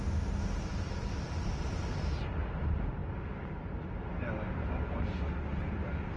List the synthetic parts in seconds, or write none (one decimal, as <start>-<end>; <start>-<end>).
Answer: none